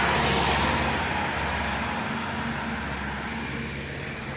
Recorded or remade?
recorded